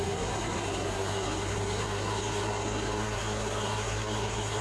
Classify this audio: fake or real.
fake